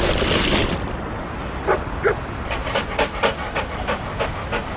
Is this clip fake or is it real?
real